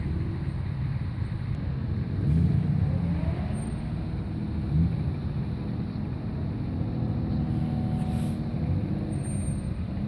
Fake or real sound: real